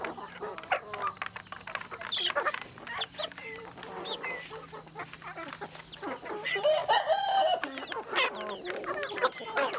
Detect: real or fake real